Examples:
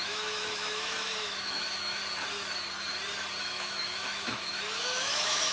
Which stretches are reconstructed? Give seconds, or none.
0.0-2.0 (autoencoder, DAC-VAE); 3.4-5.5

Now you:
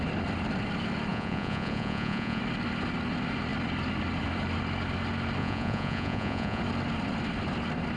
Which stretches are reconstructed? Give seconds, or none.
1.1-2.4 (vocoder, Vocos); 5.4-6.6

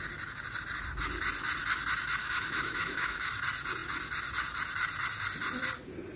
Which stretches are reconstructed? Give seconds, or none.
2.2-3.3 (autoencoder, DAC-VAE)

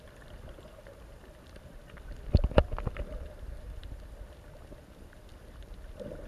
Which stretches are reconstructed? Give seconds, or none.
none

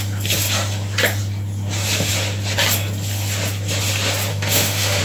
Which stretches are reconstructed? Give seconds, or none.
4.3-5.0 (autoencoder, DAC-VAE)